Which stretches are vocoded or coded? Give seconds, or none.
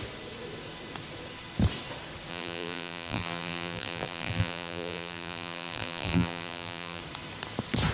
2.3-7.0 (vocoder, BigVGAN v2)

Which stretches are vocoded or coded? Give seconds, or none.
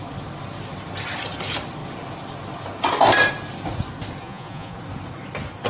4.2-4.8 (vocoder, Vocos)